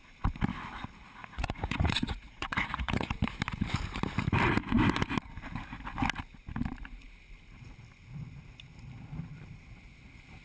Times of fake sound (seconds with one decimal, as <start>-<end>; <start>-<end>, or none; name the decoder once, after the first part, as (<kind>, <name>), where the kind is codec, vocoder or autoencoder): 1.2-3.1 (vocoder, Vocos)